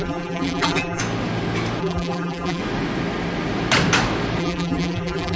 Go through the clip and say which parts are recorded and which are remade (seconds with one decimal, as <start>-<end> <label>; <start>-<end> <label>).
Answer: 0.0-1.0 remade; 1.0-1.8 recorded; 1.8-2.6 remade; 2.6-4.4 recorded; 4.4-5.4 remade